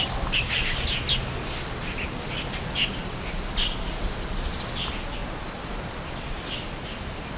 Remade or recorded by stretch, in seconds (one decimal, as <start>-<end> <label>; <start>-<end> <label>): 0.0-7.4 recorded